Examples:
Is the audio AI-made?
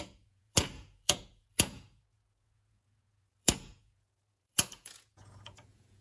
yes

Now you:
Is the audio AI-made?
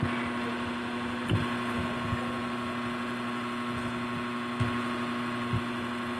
no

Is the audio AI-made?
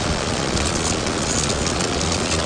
yes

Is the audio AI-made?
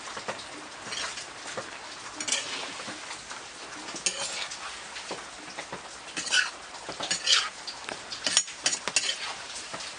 no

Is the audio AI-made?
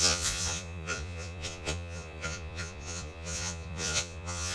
yes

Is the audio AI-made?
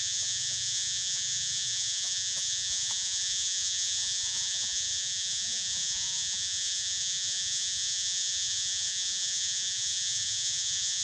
yes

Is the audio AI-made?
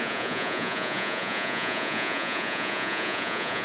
yes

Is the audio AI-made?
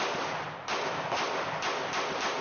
no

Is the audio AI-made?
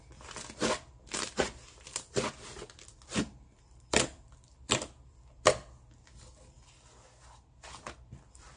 no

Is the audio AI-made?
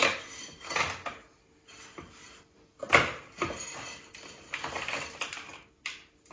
no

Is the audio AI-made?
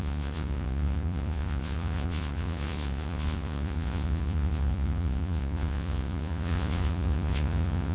yes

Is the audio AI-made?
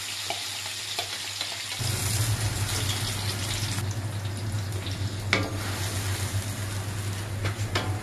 no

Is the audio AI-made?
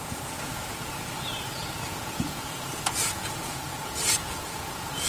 yes